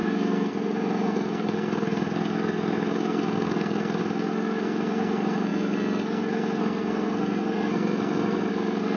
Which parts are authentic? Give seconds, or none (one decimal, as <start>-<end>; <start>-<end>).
none